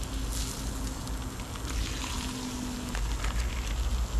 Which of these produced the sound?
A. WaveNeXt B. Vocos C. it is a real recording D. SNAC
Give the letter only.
C